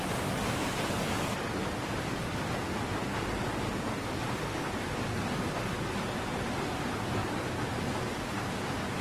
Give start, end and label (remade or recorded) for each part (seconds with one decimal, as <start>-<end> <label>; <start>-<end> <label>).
0.0-0.6 remade; 0.6-1.7 recorded; 1.7-3.0 remade; 3.0-4.3 recorded; 4.3-7.2 remade; 7.2-9.0 recorded